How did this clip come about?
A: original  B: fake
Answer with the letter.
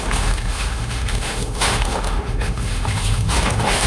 B